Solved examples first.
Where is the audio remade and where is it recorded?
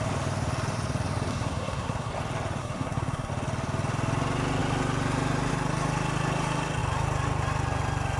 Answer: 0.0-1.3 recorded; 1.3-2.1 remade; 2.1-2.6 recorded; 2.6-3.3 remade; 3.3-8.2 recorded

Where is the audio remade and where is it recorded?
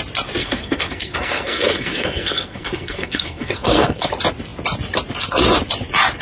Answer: 0.0-0.4 recorded; 0.4-4.1 remade; 4.1-6.2 recorded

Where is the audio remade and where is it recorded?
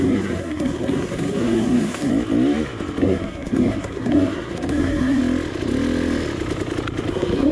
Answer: 0.0-2.1 remade; 2.1-3.0 recorded; 3.0-5.2 remade; 5.2-7.1 recorded; 7.1-7.5 remade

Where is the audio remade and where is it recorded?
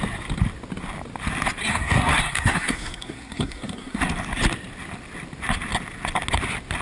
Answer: 0.0-1.7 recorded; 1.7-4.0 remade; 4.0-6.8 recorded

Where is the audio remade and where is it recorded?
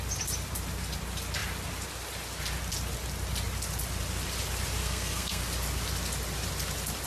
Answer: 0.0-4.8 recorded; 4.8-5.4 remade; 5.4-7.1 recorded